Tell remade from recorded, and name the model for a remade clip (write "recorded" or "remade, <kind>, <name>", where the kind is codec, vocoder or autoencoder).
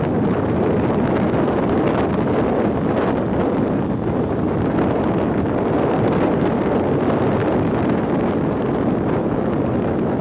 recorded